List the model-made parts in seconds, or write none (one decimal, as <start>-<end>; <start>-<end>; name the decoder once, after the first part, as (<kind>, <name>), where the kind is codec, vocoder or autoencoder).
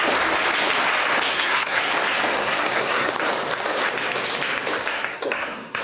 1.3-1.9 (codec, SNAC); 2.4-3.1; 4.9-5.8